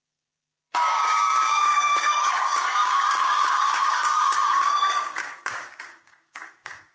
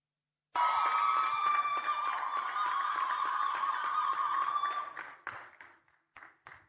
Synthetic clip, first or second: first